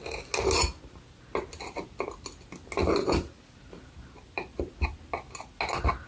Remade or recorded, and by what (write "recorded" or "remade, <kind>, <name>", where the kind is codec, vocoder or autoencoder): recorded